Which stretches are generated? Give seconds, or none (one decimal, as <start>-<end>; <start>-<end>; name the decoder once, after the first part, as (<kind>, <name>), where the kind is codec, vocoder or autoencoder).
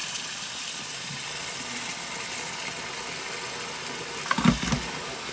none